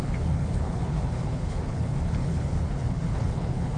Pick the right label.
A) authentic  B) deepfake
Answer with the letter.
B